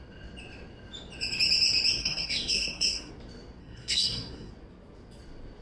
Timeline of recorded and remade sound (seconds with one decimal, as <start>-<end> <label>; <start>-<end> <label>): 0.0-2.0 recorded; 2.0-3.1 remade; 3.1-3.6 recorded; 3.6-4.5 remade; 4.5-5.6 recorded